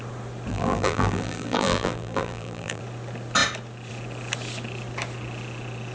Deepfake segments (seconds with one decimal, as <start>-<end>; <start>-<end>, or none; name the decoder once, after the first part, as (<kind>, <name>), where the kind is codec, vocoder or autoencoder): 0.5-2.8 (vocoder, BigVGAN v2)